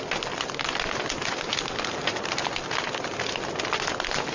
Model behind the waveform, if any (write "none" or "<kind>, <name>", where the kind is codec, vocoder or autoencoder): none